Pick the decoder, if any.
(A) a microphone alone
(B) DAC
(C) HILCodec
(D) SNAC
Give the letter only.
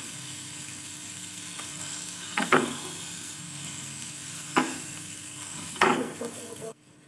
D